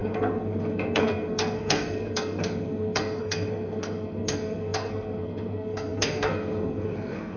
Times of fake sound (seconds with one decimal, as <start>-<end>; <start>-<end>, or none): 0.0-7.4